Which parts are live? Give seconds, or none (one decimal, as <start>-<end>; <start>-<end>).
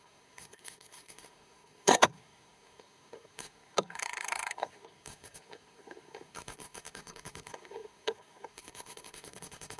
none